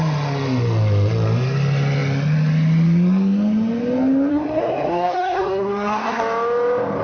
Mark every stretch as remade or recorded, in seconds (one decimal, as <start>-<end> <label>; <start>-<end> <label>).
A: 0.0-4.3 recorded; 4.3-6.2 remade; 6.2-7.0 recorded